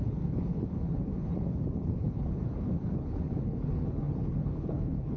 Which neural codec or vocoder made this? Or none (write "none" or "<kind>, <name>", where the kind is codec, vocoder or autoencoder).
codec, HILCodec